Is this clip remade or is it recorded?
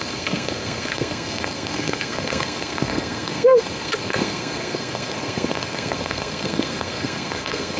remade